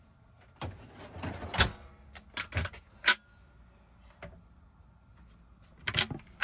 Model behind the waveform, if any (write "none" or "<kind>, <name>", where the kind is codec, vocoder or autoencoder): none